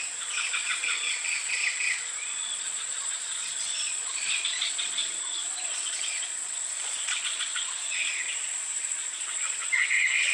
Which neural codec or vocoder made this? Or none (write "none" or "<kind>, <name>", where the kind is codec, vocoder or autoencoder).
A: vocoder, Vocos